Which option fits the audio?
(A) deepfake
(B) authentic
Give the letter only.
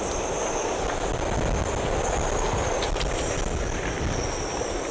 B